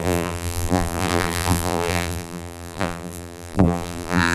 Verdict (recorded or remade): remade